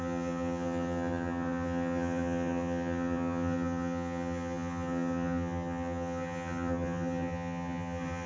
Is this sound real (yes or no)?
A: no